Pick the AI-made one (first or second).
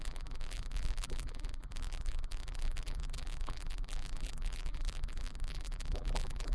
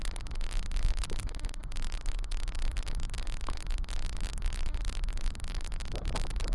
first